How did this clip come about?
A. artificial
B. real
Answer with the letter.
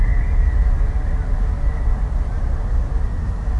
B